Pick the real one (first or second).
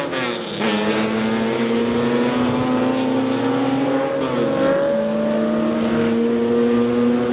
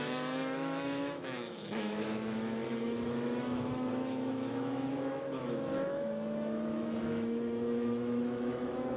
first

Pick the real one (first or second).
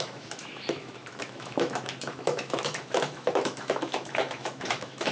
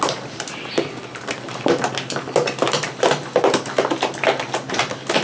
second